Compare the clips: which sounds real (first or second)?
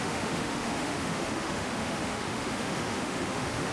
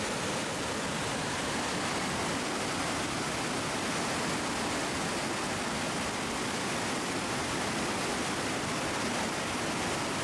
second